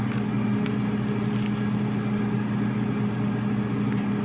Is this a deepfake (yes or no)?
no